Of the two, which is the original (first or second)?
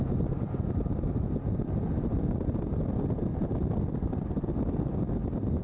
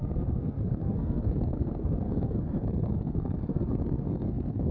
first